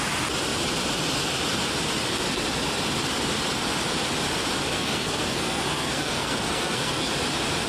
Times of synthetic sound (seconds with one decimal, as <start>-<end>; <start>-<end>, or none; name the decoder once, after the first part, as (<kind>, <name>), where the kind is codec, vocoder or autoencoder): 4.7-7.1 (codec, SNAC)